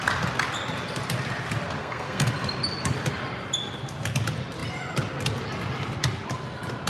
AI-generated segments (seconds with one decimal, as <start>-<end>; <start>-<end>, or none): 1.8-2.3